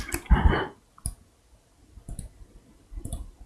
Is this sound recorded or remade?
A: recorded